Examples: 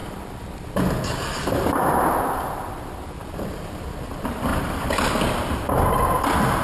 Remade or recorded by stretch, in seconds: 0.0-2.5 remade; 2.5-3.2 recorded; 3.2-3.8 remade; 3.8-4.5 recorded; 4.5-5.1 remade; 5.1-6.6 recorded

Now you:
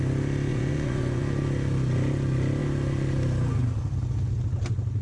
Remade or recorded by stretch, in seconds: 0.0-0.5 recorded; 0.5-1.2 remade; 1.2-5.0 recorded